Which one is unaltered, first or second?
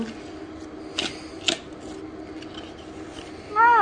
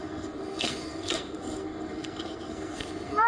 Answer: first